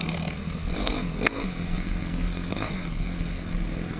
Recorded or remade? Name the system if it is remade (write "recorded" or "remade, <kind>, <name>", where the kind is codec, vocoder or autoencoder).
remade, codec, SNAC